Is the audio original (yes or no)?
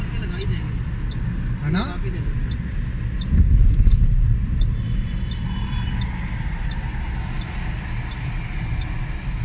yes